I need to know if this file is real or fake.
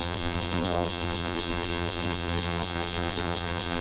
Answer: fake